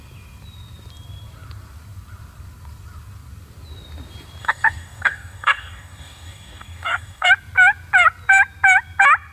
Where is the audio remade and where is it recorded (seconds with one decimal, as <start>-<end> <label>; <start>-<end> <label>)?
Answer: 0.0-4.4 recorded; 4.4-7.3 remade; 7.3-9.3 recorded